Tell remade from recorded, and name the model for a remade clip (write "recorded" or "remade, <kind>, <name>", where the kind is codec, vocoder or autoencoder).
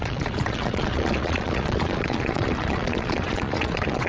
remade, vocoder, Vocos